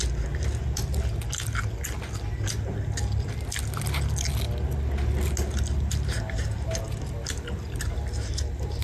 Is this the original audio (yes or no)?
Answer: yes